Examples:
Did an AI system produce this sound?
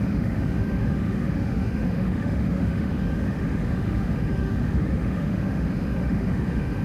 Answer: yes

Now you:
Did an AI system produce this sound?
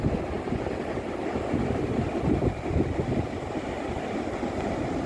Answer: no